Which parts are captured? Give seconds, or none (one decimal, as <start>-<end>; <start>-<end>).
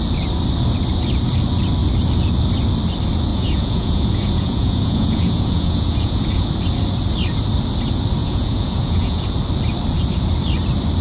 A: 0.0-3.3; 6.5-8.2; 9.3-11.0